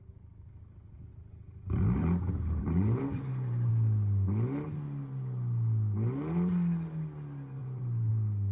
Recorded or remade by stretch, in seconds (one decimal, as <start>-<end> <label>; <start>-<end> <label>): 0.0-1.1 recorded; 1.1-3.7 remade; 3.7-7.6 recorded; 7.6-8.1 remade; 8.1-8.5 recorded